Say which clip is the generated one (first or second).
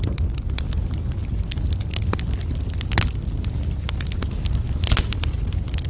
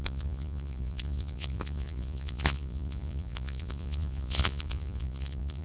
second